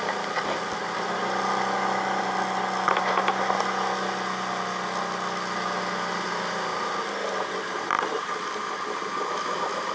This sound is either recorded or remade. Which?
recorded